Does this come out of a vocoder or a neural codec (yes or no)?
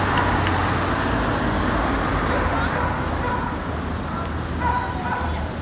no